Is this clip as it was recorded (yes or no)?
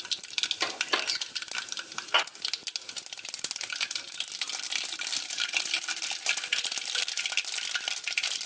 yes